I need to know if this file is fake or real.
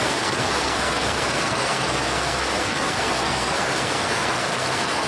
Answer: fake